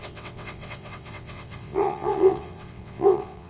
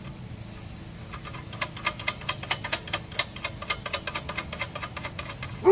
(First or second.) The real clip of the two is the second